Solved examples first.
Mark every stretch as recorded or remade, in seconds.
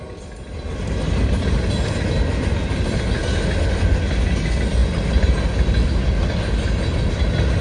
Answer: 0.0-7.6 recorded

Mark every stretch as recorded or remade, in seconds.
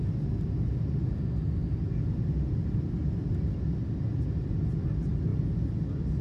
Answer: 0.0-6.2 recorded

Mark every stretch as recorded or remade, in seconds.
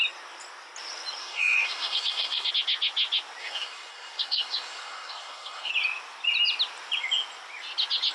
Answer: 0.0-1.2 recorded; 1.2-2.5 remade; 2.5-3.4 recorded; 3.4-5.7 remade; 5.7-8.1 recorded